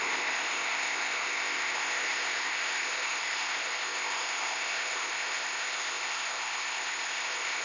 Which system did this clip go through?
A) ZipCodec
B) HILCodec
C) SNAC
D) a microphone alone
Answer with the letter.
A